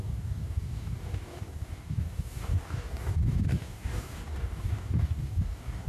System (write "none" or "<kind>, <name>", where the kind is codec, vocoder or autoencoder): codec, DAC